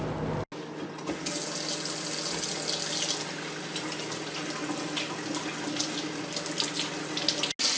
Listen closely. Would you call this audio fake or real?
real